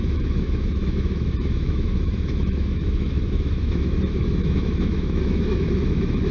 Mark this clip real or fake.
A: fake